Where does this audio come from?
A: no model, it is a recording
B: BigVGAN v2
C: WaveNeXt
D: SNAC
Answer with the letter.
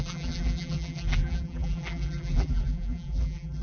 B